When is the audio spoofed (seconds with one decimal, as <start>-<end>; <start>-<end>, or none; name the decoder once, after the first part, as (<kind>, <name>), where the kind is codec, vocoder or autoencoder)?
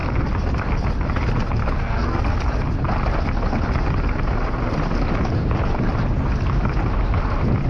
1.6-2.2 (codec, SNAC)